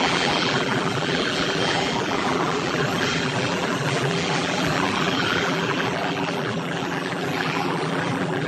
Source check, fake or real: fake